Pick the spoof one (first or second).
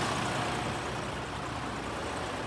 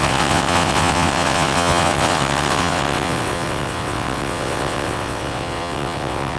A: second